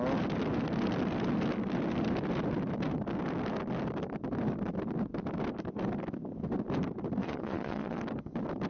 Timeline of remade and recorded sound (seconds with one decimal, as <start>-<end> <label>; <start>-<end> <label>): 0.0-7.2 recorded; 7.2-8.0 remade; 8.0-8.7 recorded